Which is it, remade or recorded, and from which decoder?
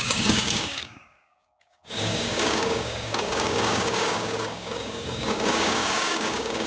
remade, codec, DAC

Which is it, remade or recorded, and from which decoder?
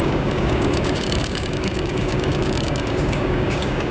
remade, codec, DAC